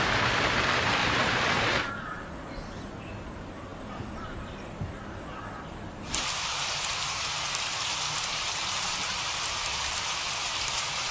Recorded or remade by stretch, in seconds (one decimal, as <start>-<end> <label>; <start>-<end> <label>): 0.0-1.0 recorded; 1.0-3.0 remade; 3.0-8.3 recorded; 8.3-9.8 remade; 9.8-11.1 recorded